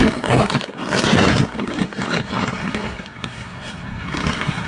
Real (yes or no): no